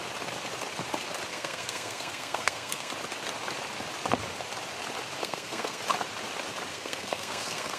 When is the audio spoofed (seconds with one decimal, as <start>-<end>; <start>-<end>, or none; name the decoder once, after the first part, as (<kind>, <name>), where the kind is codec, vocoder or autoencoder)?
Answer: 1.3-2.9 (codec, SNAC); 5.2-5.8; 6.7-7.8